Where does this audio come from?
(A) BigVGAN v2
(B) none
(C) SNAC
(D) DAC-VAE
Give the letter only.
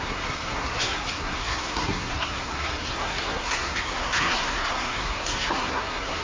C